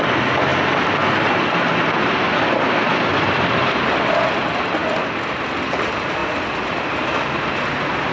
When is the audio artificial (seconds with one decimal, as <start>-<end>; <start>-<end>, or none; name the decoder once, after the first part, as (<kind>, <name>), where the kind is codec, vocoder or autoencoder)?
4.8-5.4 (vocoder, BigVGAN v2)